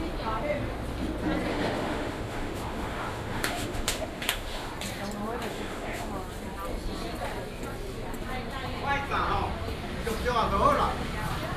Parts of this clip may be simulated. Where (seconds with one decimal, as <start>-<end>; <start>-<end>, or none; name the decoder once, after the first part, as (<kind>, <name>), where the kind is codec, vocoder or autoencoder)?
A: 1.5-4.7 (autoencoder, DAC-VAE); 5.5-6.1